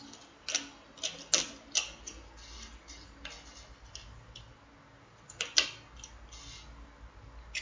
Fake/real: real